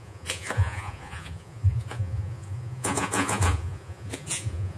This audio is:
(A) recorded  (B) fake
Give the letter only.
B